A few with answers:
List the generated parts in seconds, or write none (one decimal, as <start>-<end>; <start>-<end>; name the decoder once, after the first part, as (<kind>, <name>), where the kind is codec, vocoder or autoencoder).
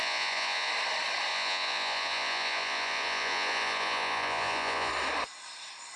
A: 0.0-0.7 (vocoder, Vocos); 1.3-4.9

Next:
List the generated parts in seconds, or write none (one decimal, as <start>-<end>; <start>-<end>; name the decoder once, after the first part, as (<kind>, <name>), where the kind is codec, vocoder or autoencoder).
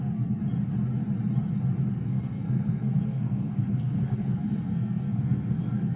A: 0.0-0.4 (codec, SNAC); 1.9-6.0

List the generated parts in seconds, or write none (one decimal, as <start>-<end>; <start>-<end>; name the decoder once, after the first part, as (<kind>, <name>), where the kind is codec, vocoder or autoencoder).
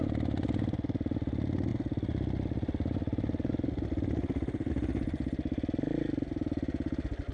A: none